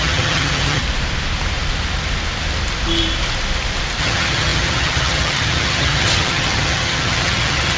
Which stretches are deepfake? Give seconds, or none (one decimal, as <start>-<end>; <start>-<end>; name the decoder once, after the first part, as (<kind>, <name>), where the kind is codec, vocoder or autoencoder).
0.0-0.8 (vocoder, HiFi-GAN); 4.0-7.8